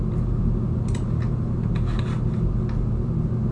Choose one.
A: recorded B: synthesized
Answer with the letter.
A